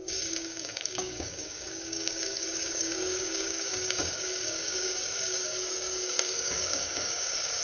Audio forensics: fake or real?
fake